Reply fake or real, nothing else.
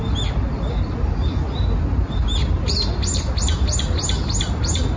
real